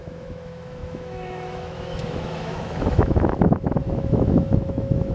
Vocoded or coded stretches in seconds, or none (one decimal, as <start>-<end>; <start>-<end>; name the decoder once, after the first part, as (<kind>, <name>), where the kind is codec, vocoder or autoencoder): 0.0-5.1 (autoencoder, DAC-VAE)